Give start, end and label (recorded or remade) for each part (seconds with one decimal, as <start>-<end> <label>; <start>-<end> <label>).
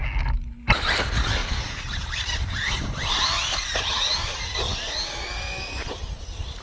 0.0-1.4 recorded; 1.4-3.6 remade; 3.6-6.6 recorded